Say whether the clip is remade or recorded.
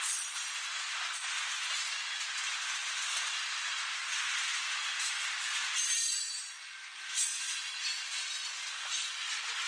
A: recorded